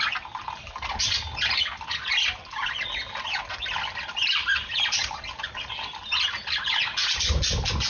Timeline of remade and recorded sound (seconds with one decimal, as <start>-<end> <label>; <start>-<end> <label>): 0.0-7.9 recorded